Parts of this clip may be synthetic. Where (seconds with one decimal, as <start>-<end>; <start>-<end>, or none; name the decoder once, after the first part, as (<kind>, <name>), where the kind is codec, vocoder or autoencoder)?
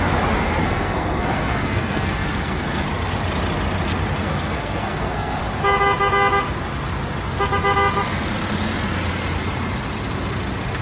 0.6-2.8 (codec, SNAC); 4.2-5.4